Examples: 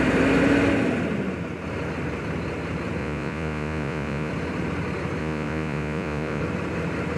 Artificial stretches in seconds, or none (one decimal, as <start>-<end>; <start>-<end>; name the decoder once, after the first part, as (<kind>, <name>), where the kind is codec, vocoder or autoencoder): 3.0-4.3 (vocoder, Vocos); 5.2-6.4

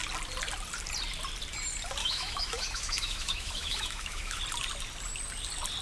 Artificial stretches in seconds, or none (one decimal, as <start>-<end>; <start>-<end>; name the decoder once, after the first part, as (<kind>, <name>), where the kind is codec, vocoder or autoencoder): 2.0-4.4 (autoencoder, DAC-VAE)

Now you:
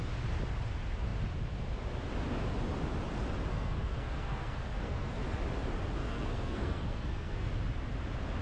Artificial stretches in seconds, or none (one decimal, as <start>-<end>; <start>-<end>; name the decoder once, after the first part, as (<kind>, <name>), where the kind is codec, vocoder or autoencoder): 3.5-5.2 (codec, SNAC); 6.0-7.5